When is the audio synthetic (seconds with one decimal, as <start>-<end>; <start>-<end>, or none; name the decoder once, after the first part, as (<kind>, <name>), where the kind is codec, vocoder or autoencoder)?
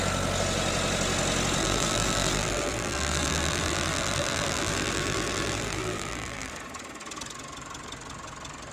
1.6-6.5 (vocoder, BigVGAN v2)